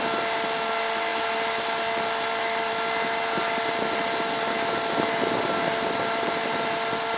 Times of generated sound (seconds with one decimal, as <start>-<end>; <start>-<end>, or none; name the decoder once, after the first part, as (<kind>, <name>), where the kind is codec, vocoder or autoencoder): none